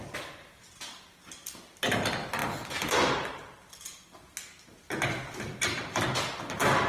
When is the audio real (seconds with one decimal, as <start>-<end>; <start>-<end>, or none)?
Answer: 0.0-6.9